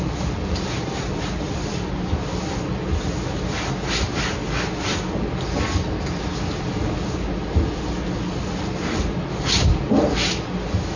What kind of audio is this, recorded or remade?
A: recorded